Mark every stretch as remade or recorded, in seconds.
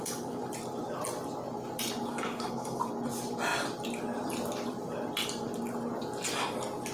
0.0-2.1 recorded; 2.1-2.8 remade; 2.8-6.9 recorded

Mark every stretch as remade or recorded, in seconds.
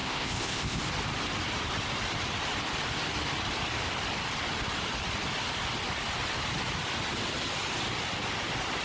0.0-0.8 remade; 0.8-8.8 recorded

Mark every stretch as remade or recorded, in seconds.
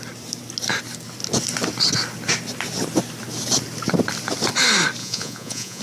0.0-5.0 recorded; 5.0-5.8 remade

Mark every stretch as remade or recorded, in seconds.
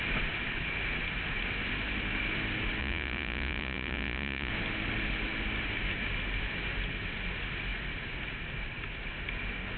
0.0-2.8 recorded; 2.8-4.5 remade; 4.5-9.8 recorded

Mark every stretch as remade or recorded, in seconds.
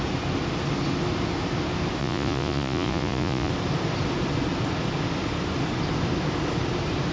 0.0-2.0 recorded; 2.0-3.5 remade; 3.5-7.1 recorded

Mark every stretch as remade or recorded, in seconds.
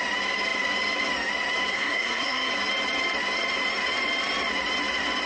0.0-1.7 recorded; 1.7-2.5 remade; 2.5-5.3 recorded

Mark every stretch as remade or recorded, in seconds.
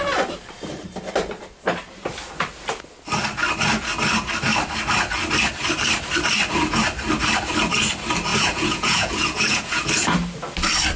0.0-8.3 recorded; 8.3-9.8 remade; 9.8-11.0 recorded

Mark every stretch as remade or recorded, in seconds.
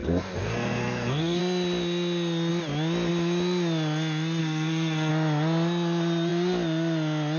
0.0-1.4 remade; 1.4-4.4 recorded; 4.4-5.1 remade; 5.1-7.4 recorded